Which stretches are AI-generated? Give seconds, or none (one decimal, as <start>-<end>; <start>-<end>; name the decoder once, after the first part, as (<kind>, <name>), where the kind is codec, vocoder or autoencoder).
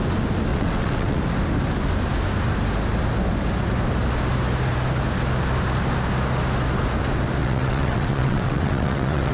0.5-1.2 (vocoder, WaveNeXt); 7.4-9.3